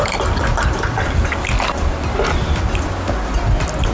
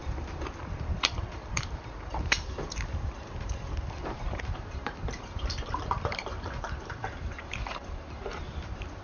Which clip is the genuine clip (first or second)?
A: first